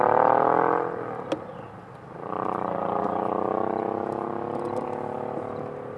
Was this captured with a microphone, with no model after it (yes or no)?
yes